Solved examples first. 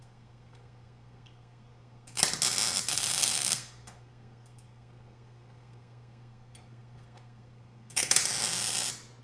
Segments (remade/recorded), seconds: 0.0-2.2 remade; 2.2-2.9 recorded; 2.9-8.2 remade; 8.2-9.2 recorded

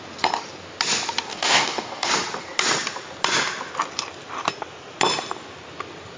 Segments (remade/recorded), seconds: 0.0-1.3 recorded; 1.3-2.1 remade; 2.1-6.2 recorded